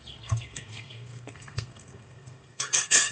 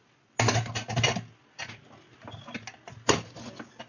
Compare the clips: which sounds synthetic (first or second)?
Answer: first